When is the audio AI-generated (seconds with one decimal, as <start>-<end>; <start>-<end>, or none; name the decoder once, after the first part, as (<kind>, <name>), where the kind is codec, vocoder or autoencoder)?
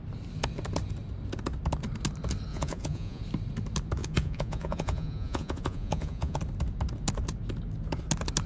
2.5-3.2 (vocoder, Vocos); 4.0-6.4